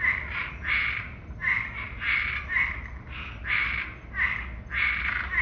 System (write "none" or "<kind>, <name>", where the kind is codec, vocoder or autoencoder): none